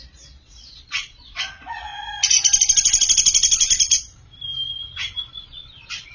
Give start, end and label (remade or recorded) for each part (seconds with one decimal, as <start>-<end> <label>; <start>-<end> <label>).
0.0-1.9 remade; 1.9-5.2 recorded; 5.2-6.1 remade